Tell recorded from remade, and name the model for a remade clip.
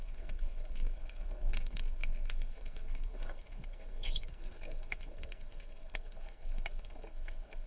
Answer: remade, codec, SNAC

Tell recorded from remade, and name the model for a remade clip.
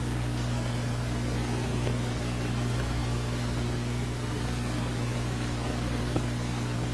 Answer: remade, codec, SNAC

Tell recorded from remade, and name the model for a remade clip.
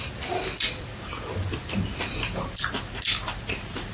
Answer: recorded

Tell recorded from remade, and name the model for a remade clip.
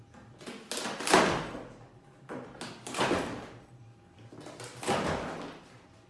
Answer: recorded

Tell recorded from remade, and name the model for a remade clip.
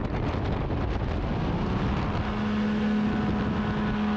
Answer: recorded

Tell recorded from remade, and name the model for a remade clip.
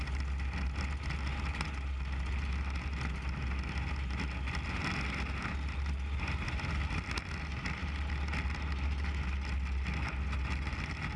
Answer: recorded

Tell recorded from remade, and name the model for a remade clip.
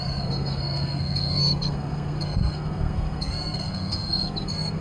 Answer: remade, codec, SNAC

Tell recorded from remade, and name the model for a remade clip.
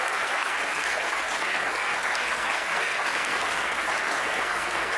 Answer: remade, codec, SNAC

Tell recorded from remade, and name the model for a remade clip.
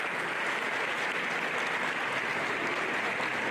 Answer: recorded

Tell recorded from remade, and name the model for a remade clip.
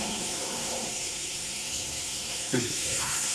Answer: remade, codec, SNAC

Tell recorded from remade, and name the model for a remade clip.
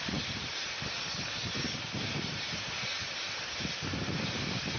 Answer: recorded